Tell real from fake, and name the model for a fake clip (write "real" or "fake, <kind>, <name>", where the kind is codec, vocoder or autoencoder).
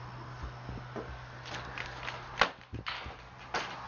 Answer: real